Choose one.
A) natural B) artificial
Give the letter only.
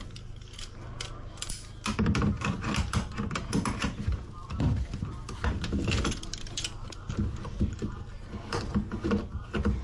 A